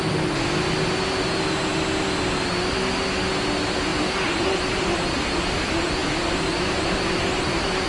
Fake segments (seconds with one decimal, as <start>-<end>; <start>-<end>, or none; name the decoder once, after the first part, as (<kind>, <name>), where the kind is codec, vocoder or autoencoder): none